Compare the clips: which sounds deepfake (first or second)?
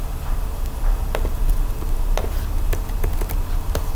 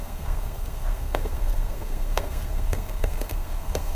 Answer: second